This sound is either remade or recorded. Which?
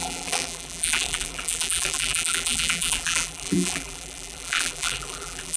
remade